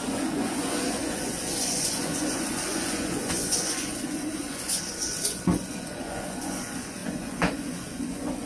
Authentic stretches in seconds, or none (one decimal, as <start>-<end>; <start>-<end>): none